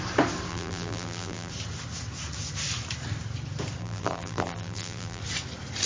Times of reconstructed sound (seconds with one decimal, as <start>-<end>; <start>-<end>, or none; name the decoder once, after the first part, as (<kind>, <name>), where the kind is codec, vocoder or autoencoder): 0.5-1.5 (vocoder, BigVGAN v2); 3.8-5.2